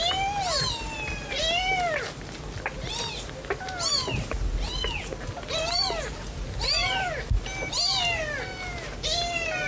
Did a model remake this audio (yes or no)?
no